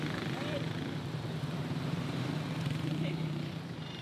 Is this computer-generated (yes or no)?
yes